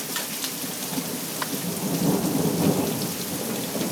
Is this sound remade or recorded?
recorded